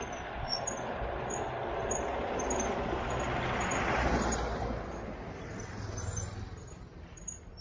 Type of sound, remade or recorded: recorded